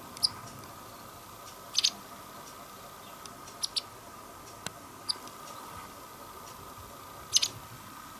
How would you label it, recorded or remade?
recorded